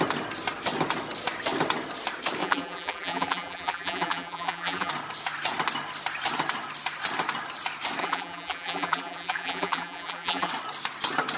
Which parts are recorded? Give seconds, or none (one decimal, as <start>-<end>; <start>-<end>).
0.0-2.4; 4.9-8.0; 10.5-11.4